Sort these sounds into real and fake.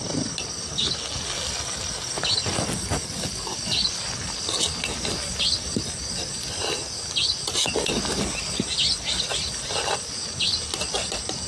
real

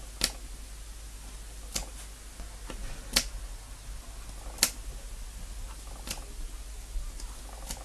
real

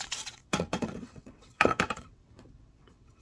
fake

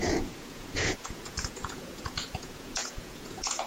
fake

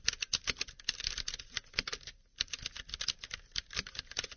real